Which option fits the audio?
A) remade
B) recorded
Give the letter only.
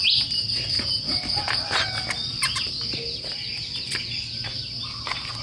B